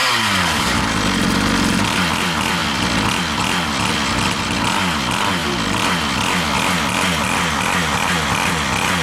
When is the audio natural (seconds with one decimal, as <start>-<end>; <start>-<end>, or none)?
0.8-9.0